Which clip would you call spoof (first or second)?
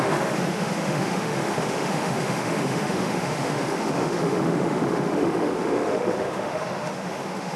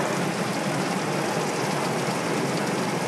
first